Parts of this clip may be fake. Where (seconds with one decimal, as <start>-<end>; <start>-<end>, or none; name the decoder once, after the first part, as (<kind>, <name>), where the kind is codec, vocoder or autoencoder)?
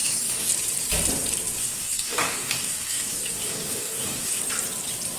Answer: 0.0-0.5 (codec, DAC); 1.6-4.4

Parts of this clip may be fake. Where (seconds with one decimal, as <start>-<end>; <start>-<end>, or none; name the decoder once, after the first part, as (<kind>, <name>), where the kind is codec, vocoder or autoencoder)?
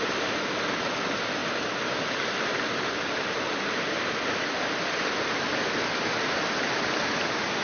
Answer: none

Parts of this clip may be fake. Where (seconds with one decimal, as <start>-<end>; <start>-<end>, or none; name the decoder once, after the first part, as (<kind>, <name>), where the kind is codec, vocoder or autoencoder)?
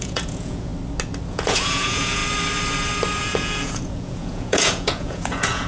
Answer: 0.0-0.7 (vocoder, Vocos); 1.3-2.2; 3.2-5.7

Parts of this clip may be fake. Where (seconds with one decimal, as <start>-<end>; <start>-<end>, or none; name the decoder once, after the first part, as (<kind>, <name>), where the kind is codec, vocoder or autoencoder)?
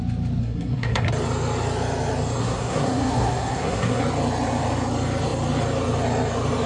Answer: 0.4-1.1 (codec, SNAC); 2.4-4.0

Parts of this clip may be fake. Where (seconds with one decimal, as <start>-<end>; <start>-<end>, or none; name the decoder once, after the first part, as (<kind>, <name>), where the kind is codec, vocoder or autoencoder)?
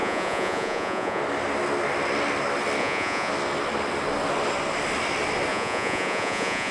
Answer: 0.0-1.2 (vocoder, Vocos); 2.8-3.3; 5.5-6.7